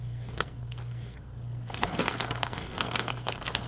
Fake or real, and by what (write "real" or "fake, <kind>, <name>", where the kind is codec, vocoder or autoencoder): fake, codec, SNAC